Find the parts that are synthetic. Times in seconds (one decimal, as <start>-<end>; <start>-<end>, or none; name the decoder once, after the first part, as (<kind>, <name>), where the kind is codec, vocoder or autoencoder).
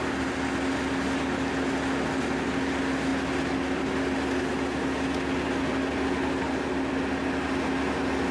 none